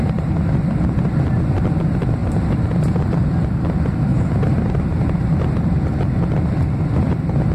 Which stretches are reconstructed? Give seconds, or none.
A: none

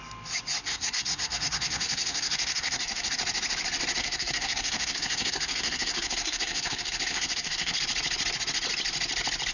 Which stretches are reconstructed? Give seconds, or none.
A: 0.6-3.1 (codec, SNAC); 4.0-7.8

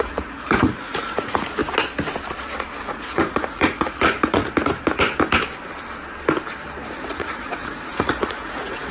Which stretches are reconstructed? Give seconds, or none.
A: 0.0-1.6 (vocoder, Vocos); 2.8-4.4; 7.0-8.9

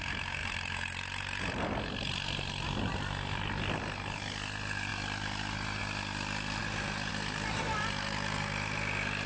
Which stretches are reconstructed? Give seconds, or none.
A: none

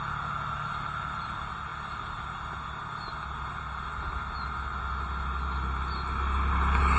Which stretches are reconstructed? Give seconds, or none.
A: none

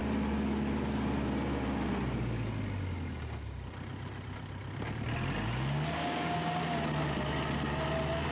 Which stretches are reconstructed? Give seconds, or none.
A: 6.0-6.6 (codec, DAC)